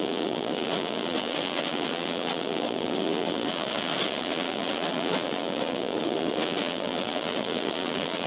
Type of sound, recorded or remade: remade